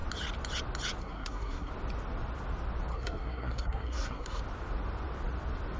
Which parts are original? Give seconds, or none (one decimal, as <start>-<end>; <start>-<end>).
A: 0.0-1.0; 1.7-2.9; 4.4-5.8